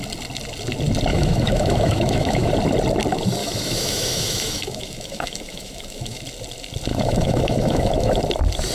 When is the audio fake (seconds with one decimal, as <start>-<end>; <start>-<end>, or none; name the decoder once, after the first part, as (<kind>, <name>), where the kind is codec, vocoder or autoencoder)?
1.1-2.5 (autoencoder, DAC-VAE); 3.4-6.2; 6.9-8.2